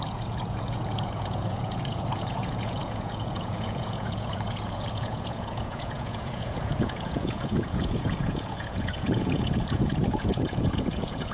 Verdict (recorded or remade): remade